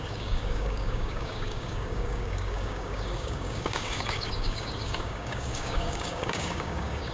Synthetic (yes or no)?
yes